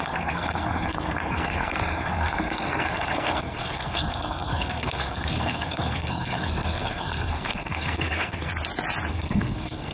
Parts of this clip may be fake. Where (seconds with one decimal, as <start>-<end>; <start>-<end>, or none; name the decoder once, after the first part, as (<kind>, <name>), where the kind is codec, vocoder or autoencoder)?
0.0-8.5 (codec, SNAC); 9.1-9.9